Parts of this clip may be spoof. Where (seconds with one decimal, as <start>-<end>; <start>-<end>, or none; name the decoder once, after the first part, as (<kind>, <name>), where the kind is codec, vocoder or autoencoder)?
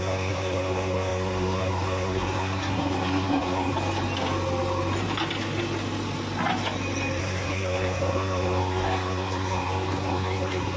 0.0-3.7 (codec, SNAC); 7.2-10.8